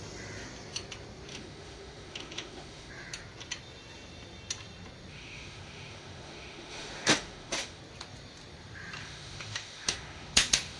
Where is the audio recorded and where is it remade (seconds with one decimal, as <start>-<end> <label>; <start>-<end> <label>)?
0.0-1.3 recorded; 1.3-2.9 remade; 2.9-5.1 recorded; 5.1-7.8 remade; 7.8-9.0 recorded; 9.0-10.8 remade